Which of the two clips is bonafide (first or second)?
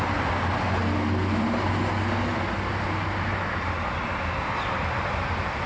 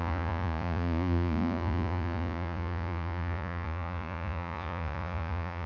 first